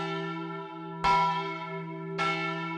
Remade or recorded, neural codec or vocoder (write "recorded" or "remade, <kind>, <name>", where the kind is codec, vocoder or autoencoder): recorded